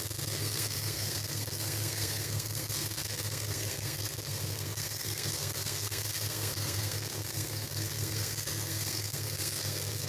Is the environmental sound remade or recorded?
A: remade